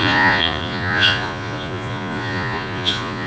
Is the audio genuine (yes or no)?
no